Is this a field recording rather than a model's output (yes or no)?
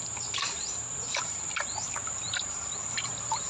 no